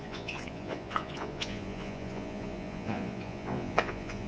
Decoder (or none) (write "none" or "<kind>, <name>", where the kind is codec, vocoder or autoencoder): vocoder, Vocos